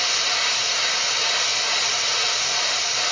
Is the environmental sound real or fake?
real